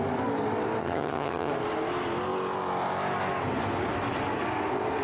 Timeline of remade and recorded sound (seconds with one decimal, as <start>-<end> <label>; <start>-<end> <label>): 0.0-0.8 recorded; 0.8-1.5 remade; 1.5-5.0 recorded